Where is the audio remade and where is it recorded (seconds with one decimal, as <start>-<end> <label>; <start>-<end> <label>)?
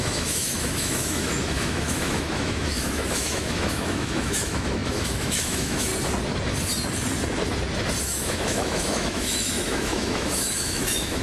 0.0-5.9 remade; 5.9-8.0 recorded; 8.0-11.2 remade